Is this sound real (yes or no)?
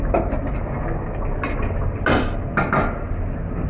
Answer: yes